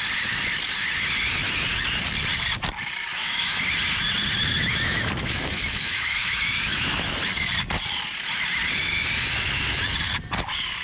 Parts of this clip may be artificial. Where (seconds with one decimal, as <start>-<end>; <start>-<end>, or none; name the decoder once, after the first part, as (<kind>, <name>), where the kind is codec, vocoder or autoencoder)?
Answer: 3.1-3.6 (autoencoder, DAC-VAE); 4.4-7.2